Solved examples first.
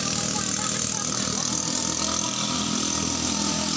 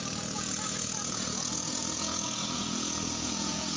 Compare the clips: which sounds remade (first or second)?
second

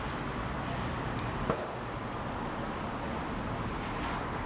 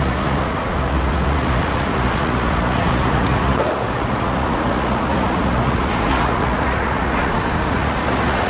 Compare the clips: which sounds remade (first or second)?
second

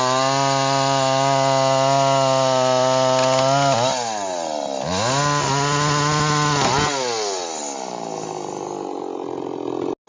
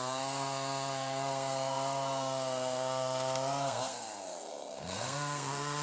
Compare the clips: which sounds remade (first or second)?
second